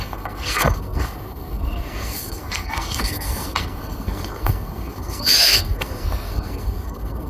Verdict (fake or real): fake